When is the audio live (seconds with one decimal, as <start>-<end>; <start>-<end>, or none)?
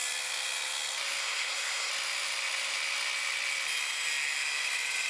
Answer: 0.0-1.2; 1.9-5.1